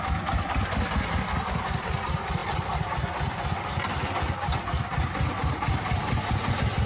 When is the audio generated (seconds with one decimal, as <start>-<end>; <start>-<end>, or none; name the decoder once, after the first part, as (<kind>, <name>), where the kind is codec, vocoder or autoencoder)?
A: none